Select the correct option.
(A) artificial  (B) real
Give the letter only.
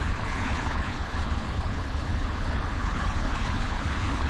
A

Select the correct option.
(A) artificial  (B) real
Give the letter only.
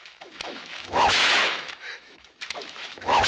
A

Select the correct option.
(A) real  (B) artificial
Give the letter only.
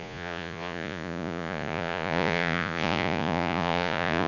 B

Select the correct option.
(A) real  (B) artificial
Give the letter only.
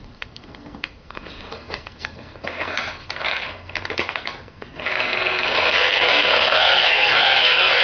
B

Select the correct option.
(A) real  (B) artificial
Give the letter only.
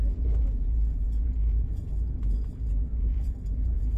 B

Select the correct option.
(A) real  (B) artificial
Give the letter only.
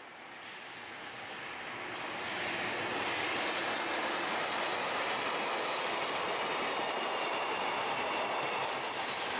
A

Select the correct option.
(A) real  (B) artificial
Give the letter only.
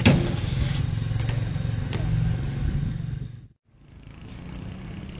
A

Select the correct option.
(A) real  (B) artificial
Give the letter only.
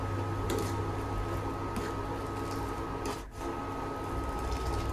A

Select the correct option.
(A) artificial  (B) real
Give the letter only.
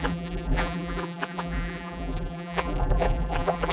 A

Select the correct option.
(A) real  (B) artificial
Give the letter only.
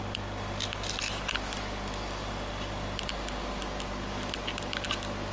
A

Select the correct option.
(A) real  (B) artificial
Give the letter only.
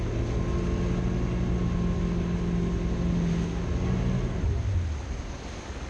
A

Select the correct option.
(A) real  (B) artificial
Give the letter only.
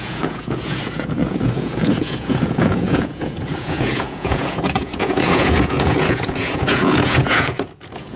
B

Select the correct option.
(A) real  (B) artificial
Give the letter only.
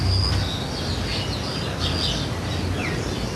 A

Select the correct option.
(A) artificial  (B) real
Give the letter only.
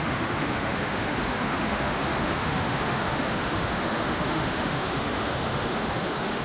A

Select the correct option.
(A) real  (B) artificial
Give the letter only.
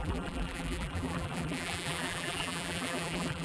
B